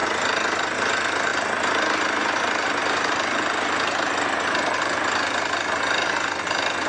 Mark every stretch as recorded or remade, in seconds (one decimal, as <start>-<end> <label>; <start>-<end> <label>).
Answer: 0.0-0.9 remade; 0.9-2.8 recorded; 2.8-6.1 remade; 6.1-6.9 recorded